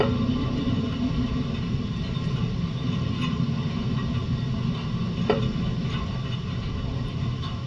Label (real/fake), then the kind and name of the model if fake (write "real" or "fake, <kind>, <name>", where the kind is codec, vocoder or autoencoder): fake, vocoder, BigVGAN v2